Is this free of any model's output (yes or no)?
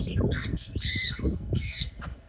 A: no